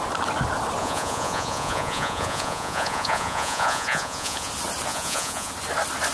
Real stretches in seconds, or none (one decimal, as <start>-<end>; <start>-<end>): 0.0-0.8; 4.5-4.9; 5.5-6.1